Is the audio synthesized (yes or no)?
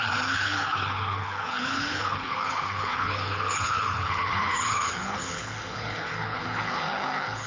yes